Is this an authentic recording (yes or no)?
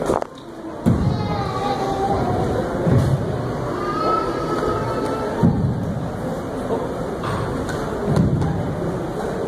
yes